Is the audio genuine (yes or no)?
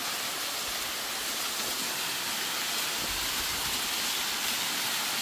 yes